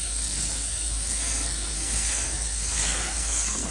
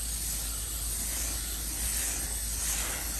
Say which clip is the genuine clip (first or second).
second